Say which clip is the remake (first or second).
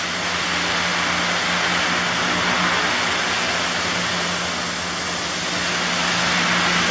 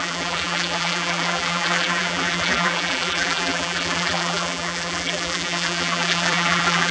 second